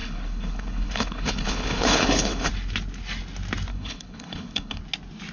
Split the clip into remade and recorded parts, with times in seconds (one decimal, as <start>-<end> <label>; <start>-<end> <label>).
0.0-2.5 remade; 2.5-3.7 recorded; 3.7-4.8 remade; 4.8-5.3 recorded